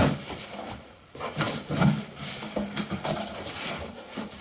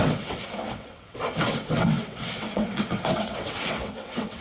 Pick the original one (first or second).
first